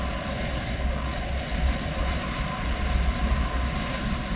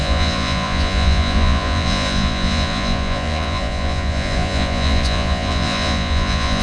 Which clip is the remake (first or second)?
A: second